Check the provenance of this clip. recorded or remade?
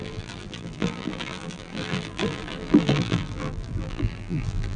remade